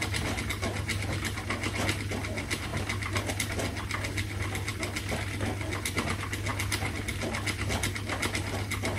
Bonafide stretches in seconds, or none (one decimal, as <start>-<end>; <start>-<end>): 0.0-9.0